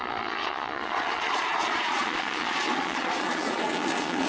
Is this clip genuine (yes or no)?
no